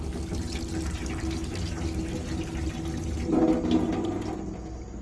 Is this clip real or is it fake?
real